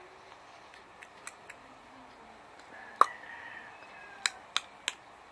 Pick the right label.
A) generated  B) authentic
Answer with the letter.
B